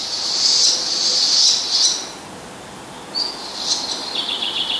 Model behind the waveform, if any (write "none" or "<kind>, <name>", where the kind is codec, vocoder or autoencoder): none